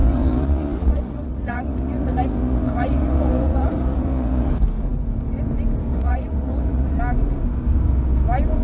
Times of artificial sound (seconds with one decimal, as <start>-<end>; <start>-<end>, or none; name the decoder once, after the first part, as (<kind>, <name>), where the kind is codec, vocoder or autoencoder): 0.0-4.5 (vocoder, Vocos); 5.9-7.0